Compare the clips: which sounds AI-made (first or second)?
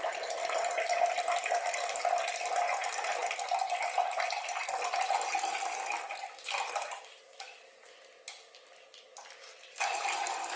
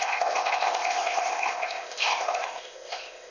second